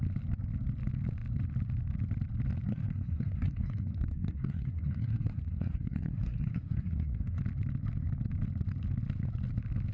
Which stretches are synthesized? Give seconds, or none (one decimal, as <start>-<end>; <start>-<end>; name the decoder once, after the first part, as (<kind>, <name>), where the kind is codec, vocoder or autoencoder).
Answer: 2.7-7.4 (codec, SNAC)